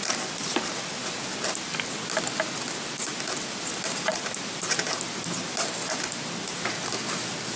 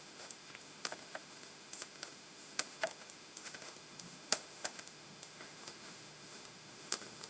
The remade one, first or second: second